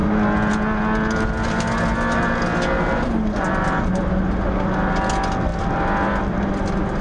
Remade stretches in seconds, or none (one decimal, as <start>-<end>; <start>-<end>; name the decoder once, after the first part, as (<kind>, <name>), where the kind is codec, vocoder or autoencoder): none